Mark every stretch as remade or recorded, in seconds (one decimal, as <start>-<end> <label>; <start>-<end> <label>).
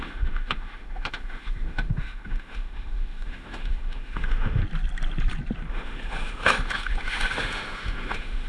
0.0-4.6 remade; 4.6-5.7 recorded; 5.7-8.5 remade